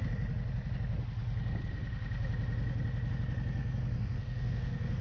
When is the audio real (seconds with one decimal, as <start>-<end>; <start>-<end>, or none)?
0.0-3.6